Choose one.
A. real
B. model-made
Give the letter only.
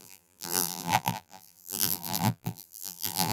B